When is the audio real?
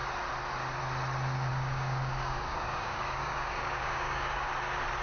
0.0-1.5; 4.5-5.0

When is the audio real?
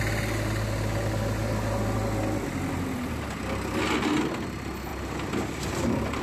0.0-6.2